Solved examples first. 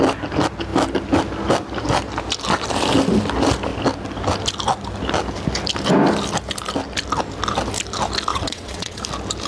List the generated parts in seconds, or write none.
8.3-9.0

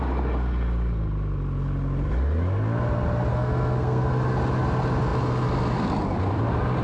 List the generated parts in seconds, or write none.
3.3-4.1